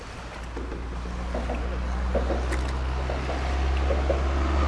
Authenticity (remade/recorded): recorded